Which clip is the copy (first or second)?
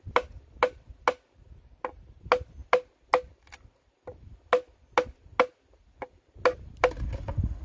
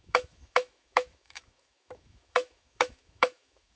second